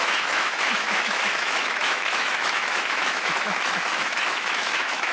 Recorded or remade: remade